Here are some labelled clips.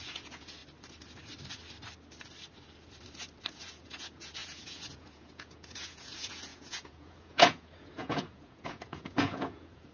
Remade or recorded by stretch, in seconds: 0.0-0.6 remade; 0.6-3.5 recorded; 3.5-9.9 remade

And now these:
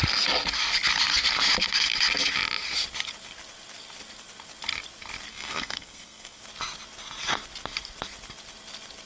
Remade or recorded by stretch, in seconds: 0.0-5.3 recorded; 5.3-6.4 remade; 6.4-9.1 recorded

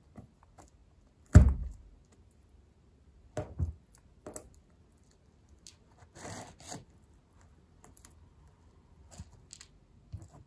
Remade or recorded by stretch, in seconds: 0.0-10.5 recorded

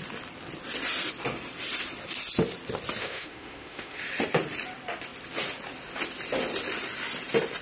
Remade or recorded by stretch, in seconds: 0.0-3.0 recorded; 3.0-4.0 remade; 4.0-7.6 recorded

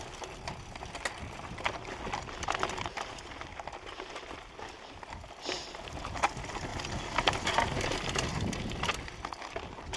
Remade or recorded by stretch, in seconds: 0.0-10.0 recorded

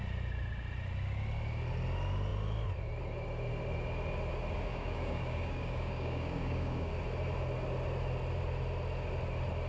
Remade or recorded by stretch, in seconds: 0.0-4.7 recorded; 4.7-6.9 remade; 6.9-9.7 recorded